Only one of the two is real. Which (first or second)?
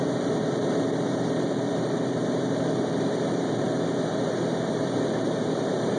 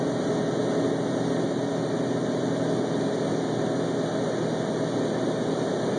second